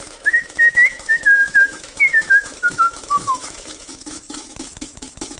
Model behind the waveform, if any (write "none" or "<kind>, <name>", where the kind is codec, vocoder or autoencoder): autoencoder, DAC-VAE